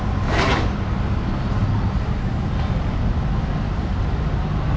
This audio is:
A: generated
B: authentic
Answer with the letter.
B